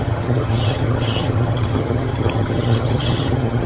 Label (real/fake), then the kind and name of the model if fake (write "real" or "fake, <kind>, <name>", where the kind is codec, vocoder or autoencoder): fake, vocoder, HiFi-GAN